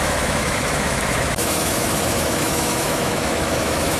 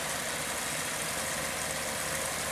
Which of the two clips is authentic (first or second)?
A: second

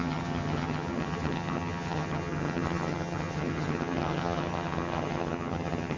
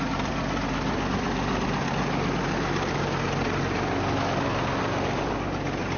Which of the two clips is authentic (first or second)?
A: second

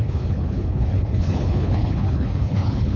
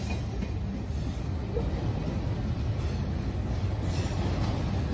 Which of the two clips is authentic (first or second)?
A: second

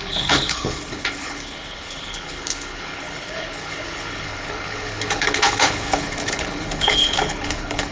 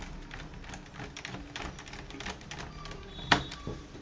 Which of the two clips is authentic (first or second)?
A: second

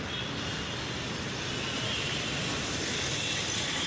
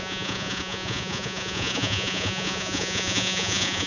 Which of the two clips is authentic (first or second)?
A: first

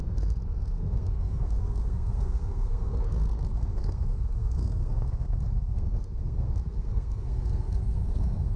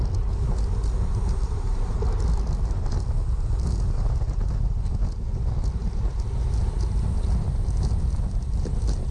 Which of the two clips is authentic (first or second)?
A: second